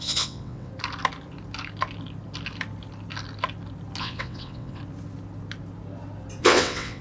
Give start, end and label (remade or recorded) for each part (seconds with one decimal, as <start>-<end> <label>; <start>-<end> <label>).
0.0-0.7 remade; 0.7-4.0 recorded; 4.0-4.8 remade; 4.8-6.4 recorded; 6.4-7.0 remade